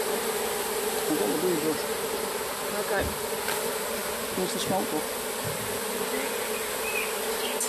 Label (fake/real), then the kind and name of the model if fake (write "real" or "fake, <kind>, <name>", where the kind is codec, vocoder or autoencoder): real